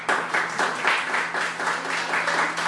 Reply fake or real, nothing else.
real